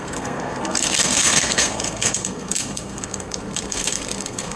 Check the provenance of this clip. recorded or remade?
remade